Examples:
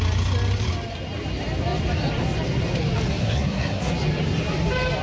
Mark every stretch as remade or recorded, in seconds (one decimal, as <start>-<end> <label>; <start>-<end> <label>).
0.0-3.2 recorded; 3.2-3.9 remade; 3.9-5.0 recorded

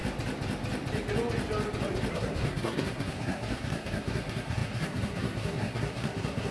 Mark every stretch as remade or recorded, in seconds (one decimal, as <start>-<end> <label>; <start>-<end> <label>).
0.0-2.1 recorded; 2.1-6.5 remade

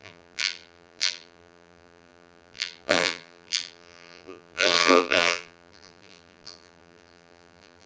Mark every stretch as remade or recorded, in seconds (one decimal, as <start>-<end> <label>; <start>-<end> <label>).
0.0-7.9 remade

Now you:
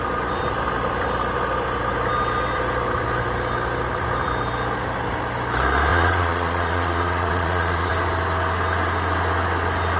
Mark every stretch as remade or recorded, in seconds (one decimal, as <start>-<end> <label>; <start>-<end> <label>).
0.0-5.9 recorded; 5.9-7.9 remade; 7.9-10.0 recorded

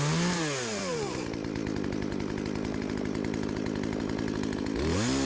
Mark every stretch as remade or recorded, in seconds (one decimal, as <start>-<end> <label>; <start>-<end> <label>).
0.0-5.2 recorded

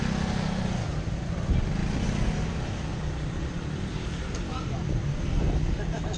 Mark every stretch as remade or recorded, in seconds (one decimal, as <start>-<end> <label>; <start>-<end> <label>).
0.0-1.8 recorded; 1.8-5.4 remade; 5.4-6.2 recorded

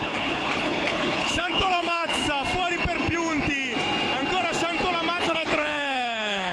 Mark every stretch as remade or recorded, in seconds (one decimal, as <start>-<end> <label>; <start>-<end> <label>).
0.0-2.2 remade; 2.2-5.2 recorded; 5.2-6.5 remade

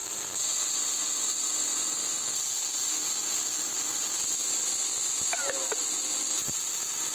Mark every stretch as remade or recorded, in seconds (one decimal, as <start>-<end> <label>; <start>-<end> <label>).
0.0-0.7 remade; 0.7-6.4 recorded; 6.4-7.1 remade